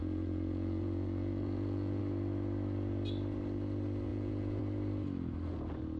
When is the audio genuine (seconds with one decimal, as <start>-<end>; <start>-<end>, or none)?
2.0-4.1; 4.6-6.0

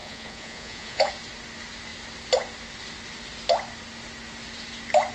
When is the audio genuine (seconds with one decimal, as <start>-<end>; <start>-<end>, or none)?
1.1-5.1